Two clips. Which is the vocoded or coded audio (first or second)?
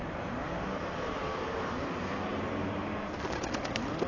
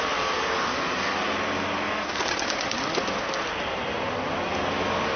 first